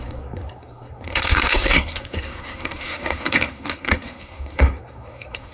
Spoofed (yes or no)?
yes